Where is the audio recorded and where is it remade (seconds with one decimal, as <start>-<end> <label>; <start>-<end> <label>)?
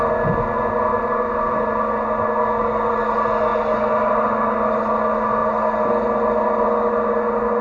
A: 0.0-7.6 recorded